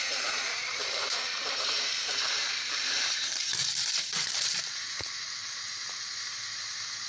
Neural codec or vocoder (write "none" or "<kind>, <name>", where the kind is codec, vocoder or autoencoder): vocoder, BigVGAN v2